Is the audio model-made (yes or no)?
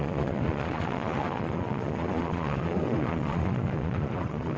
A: yes